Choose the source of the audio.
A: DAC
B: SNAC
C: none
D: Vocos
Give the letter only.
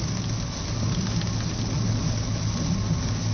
C